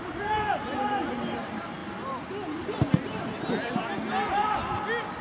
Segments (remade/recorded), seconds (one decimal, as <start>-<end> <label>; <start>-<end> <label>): 0.0-5.2 recorded